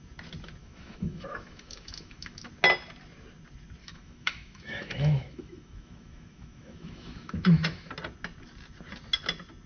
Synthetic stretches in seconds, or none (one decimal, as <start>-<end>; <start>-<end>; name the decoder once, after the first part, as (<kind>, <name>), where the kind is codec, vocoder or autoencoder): 0.6-2.5 (autoencoder, DAC-VAE); 3.8-7.9